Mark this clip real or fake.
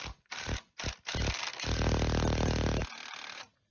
real